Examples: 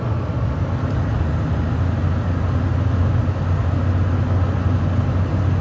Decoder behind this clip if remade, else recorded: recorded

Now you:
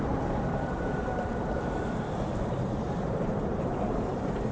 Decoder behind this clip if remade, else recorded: remade, vocoder, BigVGAN v2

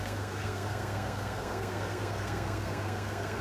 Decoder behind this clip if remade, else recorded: remade, codec, SNAC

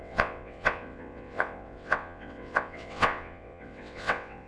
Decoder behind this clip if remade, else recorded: remade, vocoder, WaveNeXt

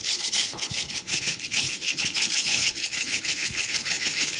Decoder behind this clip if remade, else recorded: remade, codec, HILCodec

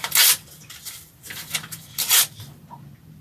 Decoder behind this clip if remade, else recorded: recorded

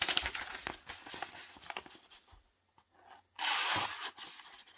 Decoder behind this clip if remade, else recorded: recorded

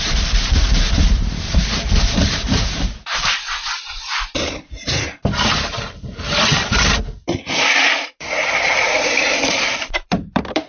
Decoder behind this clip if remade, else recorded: remade, vocoder, BigVGAN v2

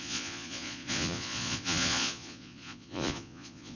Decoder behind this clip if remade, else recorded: remade, vocoder, Vocos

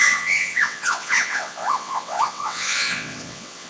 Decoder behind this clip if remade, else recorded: remade, vocoder, WaveNeXt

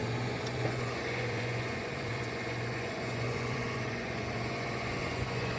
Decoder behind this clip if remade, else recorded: remade, vocoder, Vocos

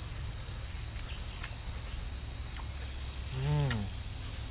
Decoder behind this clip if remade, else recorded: recorded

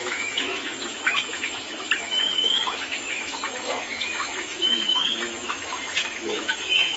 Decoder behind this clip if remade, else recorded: remade, autoencoder, DAC-VAE